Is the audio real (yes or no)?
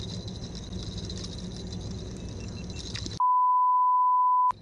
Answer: yes